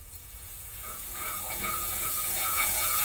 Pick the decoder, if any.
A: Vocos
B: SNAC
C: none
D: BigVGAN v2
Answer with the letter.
A